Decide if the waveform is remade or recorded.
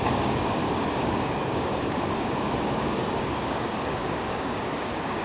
remade